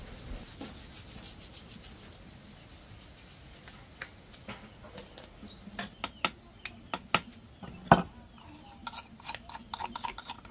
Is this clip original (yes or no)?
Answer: yes